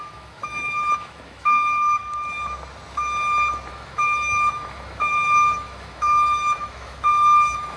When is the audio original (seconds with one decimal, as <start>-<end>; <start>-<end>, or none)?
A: 2.0-3.7